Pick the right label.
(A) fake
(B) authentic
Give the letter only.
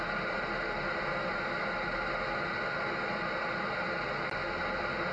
B